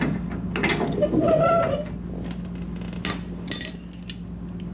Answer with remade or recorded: recorded